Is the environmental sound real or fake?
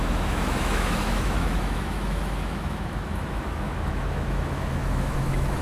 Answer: fake